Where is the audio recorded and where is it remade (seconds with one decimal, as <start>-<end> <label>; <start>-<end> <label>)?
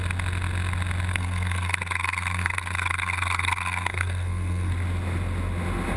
0.0-1.1 recorded; 1.1-4.7 remade; 4.7-6.0 recorded